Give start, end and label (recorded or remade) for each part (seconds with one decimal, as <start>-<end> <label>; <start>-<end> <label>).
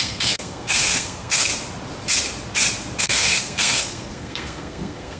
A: 0.0-1.5 remade; 1.5-3.0 recorded; 3.0-5.2 remade